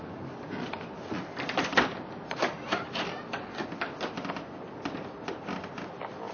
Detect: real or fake real